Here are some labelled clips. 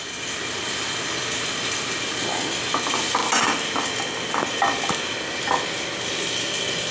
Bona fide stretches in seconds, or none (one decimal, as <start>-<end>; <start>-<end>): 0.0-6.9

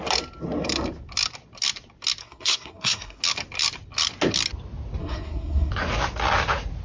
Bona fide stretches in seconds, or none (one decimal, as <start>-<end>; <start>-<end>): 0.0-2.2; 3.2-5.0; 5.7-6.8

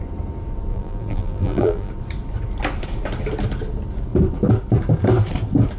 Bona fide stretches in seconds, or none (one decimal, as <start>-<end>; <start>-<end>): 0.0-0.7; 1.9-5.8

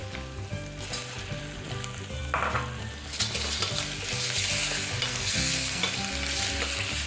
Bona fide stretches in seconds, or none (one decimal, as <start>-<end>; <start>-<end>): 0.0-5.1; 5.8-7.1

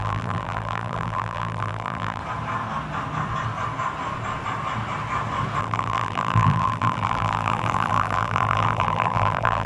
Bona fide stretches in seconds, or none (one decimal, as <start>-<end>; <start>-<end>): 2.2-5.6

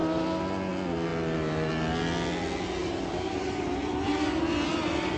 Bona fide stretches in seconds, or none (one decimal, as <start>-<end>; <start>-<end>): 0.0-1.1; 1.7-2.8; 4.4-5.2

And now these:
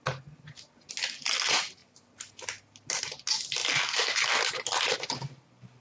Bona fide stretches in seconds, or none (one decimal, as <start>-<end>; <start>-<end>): 0.0-5.8

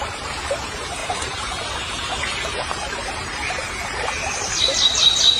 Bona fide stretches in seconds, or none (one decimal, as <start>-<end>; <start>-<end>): 0.0-1.0; 4.2-5.4